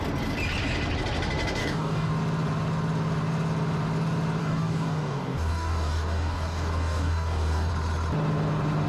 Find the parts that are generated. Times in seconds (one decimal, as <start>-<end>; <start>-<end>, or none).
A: 1.6-2.1; 4.4-7.7